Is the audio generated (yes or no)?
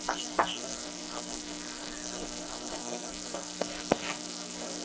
yes